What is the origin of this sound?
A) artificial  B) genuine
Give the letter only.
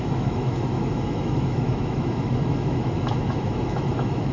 A